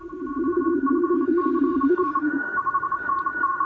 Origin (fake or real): fake